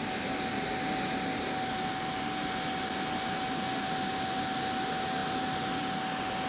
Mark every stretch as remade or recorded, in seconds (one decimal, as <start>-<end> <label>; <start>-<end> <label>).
0.0-6.5 recorded

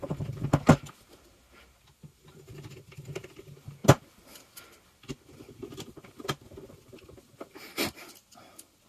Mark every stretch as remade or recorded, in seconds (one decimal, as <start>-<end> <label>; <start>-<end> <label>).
0.0-8.9 recorded

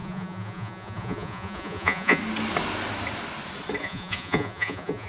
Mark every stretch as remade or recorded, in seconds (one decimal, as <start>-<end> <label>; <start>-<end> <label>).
0.0-2.2 remade; 2.2-3.8 recorded; 3.8-5.1 remade